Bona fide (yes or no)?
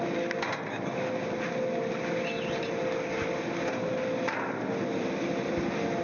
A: yes